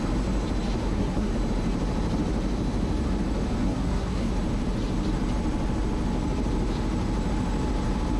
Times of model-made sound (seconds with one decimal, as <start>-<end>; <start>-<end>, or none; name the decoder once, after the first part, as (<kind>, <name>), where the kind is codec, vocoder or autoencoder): 0.8-1.3 (codec, SNAC); 3.6-4.3